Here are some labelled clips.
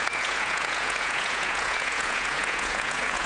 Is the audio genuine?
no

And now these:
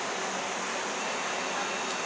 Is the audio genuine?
yes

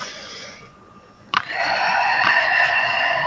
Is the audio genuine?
no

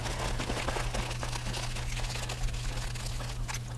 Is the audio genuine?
yes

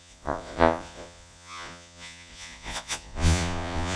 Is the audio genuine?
no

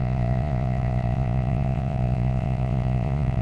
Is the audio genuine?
no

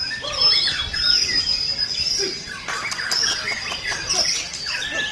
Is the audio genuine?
yes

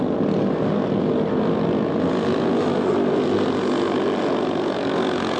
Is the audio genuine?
yes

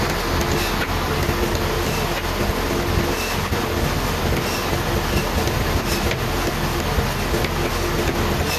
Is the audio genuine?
yes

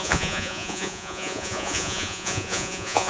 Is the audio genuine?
no